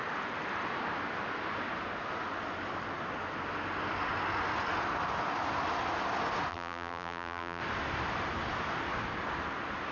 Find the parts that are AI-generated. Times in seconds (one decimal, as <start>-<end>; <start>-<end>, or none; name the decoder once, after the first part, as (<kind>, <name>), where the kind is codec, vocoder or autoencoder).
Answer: 6.5-7.6 (vocoder, BigVGAN v2)